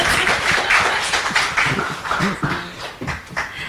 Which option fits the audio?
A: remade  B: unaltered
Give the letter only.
B